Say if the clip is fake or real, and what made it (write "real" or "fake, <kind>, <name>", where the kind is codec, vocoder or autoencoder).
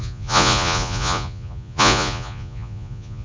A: fake, vocoder, Vocos